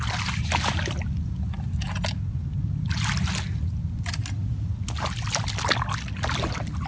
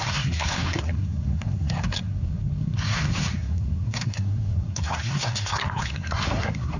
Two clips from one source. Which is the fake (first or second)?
second